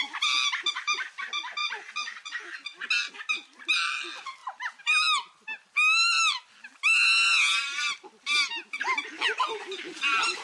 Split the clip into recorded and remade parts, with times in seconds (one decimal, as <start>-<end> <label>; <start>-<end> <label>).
0.0-4.4 recorded; 4.4-5.0 remade; 5.0-10.4 recorded